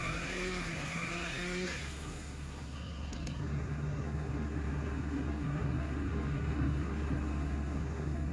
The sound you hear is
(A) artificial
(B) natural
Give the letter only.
A